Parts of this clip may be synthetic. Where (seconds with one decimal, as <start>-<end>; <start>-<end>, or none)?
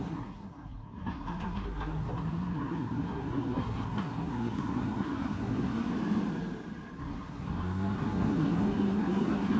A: 0.0-5.9; 7.0-9.6